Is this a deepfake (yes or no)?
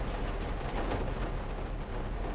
no